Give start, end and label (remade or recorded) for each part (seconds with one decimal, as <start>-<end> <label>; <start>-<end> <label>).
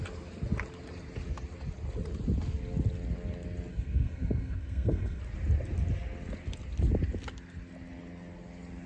0.0-3.7 recorded; 3.7-5.2 remade; 5.2-8.9 recorded